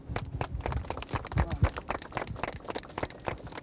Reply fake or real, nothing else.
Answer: real